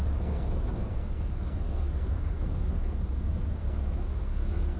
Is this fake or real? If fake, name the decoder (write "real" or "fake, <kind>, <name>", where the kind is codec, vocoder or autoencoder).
fake, codec, SNAC